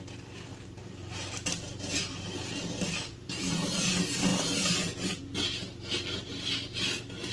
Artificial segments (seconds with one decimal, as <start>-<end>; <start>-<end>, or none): 0.5-3.9